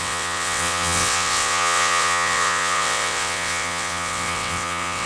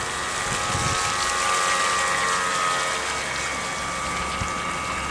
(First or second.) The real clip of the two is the second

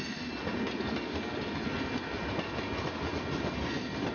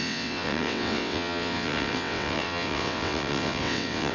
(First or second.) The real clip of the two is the first